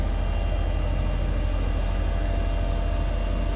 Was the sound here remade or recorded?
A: recorded